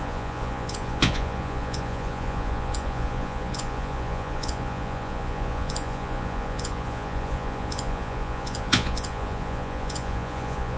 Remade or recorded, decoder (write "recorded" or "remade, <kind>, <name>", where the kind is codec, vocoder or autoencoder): remade, vocoder, Vocos